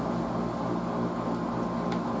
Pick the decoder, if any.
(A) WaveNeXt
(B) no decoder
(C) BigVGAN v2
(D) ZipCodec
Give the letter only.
B